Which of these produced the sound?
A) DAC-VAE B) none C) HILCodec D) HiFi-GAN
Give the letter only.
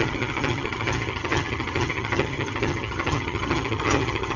D